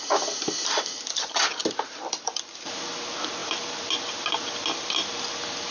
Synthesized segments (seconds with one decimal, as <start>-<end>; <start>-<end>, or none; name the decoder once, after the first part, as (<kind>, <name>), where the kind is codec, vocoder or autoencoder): 1.6-2.5 (vocoder, BigVGAN v2)